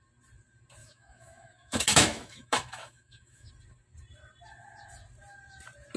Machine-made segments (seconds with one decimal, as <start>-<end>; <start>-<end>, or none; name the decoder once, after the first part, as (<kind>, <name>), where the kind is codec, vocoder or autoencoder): 0.8-3.5 (autoencoder, DAC-VAE)